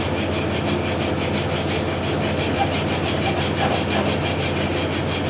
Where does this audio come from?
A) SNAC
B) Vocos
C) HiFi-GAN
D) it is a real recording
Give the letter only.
D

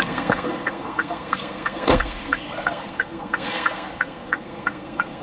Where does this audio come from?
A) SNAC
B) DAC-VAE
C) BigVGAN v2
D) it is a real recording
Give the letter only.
A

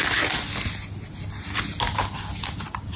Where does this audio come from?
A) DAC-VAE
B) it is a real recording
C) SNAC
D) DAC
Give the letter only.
B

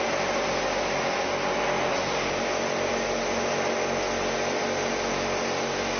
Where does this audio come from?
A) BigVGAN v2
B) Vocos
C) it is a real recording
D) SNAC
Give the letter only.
C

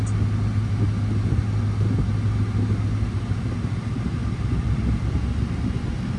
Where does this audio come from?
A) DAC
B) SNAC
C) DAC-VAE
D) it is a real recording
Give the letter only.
D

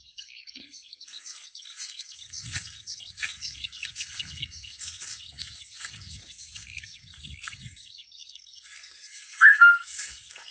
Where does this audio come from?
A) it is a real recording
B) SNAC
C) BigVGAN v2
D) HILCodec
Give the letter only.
B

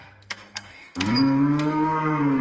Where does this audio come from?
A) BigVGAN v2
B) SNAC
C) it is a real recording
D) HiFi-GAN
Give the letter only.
B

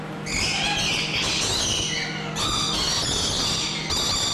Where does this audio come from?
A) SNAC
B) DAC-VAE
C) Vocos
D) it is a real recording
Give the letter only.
D